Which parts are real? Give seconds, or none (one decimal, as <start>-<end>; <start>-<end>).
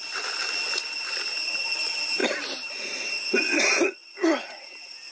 0.0-5.1